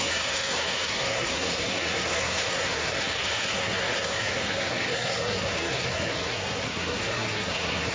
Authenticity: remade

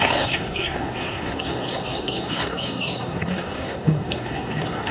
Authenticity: remade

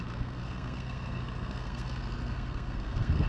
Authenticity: remade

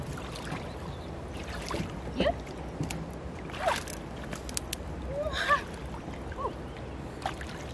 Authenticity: recorded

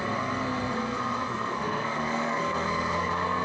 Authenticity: remade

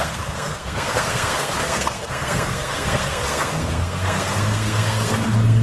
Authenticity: remade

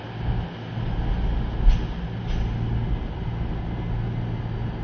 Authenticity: recorded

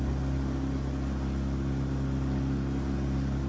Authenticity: recorded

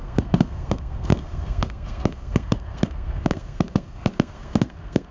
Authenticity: remade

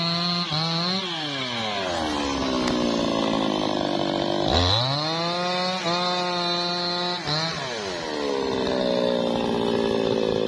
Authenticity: recorded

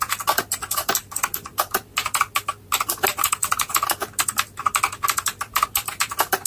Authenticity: recorded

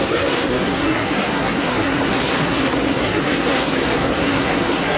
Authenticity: remade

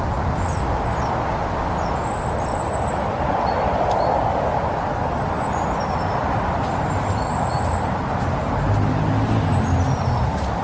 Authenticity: recorded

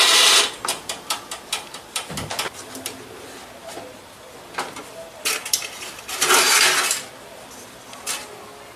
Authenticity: recorded